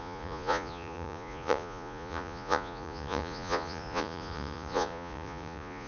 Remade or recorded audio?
remade